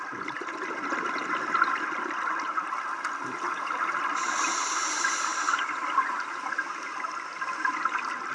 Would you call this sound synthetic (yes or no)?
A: no